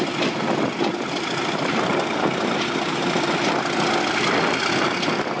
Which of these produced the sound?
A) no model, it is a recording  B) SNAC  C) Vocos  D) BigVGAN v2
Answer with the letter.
A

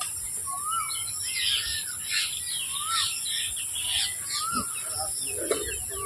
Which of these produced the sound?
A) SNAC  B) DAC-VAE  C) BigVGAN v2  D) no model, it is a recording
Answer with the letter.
D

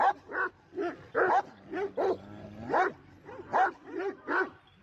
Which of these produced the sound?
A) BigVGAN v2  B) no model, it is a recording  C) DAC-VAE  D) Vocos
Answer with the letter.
B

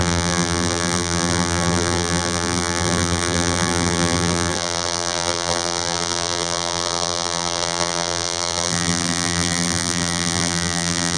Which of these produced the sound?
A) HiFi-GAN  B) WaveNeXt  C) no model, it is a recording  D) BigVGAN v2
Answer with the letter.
D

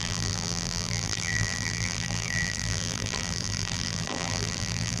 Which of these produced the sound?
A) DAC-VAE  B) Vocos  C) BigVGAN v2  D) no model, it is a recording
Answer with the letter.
C